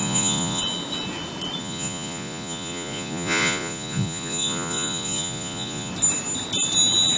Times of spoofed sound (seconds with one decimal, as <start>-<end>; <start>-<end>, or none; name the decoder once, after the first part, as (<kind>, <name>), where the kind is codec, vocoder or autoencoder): 0.0-0.6 (vocoder, Vocos); 1.6-5.9